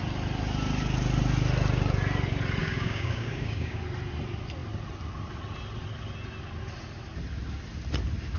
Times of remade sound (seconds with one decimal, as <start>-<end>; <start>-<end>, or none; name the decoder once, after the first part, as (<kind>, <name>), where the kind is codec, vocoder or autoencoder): 2.6-3.8 (codec, DAC)